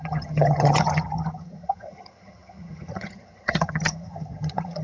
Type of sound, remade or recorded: remade